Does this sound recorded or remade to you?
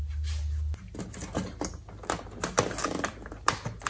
recorded